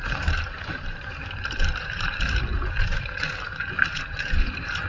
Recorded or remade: remade